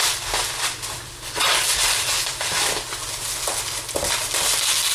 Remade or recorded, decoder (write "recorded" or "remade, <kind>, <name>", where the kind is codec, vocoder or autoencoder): recorded